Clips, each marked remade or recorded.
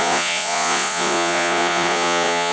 remade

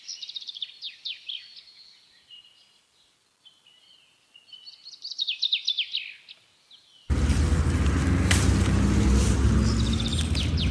recorded